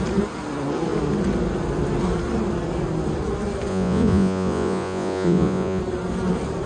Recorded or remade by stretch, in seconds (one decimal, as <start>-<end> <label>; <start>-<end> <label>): 0.0-3.7 recorded; 3.7-5.8 remade; 5.8-6.7 recorded